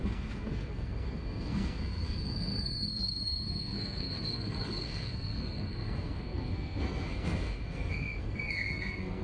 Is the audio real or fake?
fake